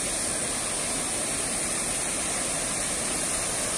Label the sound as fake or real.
real